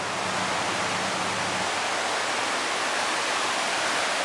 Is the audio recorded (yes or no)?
yes